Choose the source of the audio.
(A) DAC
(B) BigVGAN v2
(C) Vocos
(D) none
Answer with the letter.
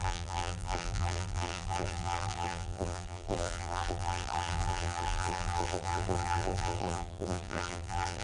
B